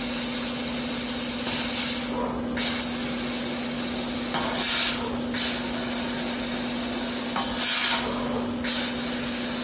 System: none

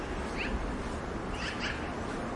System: none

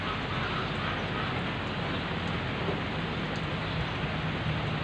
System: none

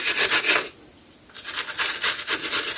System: none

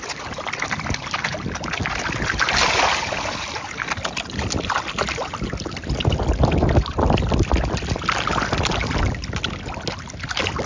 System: none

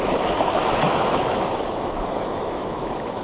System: autoencoder, DAC-VAE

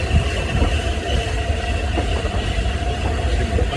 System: none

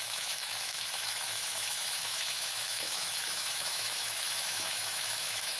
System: autoencoder, DAC-VAE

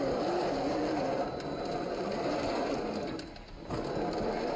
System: none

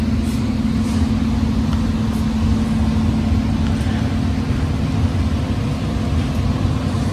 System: none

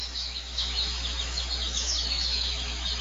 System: autoencoder, DAC-VAE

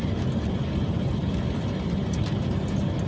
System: none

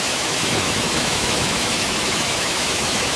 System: autoencoder, DAC-VAE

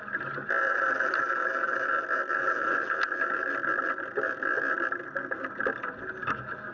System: none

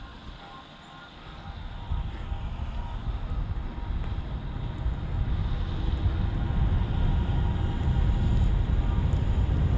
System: none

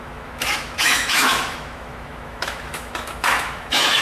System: autoencoder, DAC-VAE